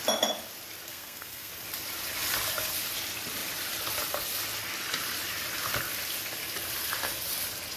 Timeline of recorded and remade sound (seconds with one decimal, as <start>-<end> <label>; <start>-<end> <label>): 0.0-0.9 recorded; 0.9-1.5 remade; 1.5-7.8 recorded